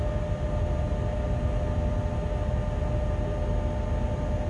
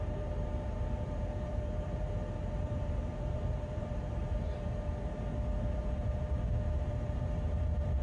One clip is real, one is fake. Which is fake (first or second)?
second